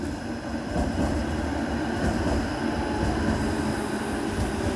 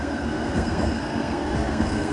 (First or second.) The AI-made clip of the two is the second